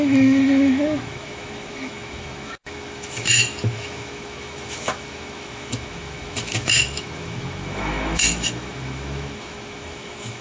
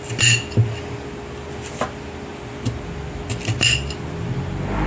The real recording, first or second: second